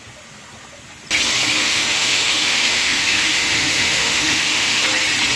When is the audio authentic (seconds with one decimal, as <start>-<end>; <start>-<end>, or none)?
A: 0.0-1.6; 4.8-5.4